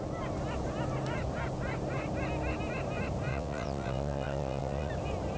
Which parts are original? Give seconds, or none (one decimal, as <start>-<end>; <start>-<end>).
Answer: 0.0-3.3; 4.9-5.4